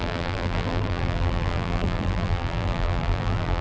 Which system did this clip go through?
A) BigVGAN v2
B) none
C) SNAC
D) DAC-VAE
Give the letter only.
A